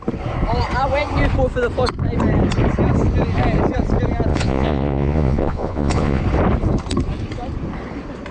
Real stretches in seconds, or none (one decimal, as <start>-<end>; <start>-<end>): 0.0-4.3; 6.2-8.3